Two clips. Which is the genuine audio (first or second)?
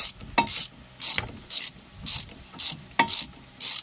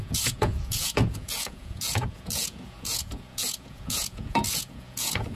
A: first